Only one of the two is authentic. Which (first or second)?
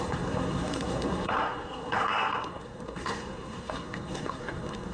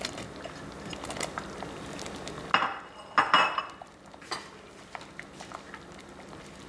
second